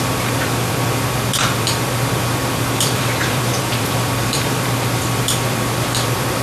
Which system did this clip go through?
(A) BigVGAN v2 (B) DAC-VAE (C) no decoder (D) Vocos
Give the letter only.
A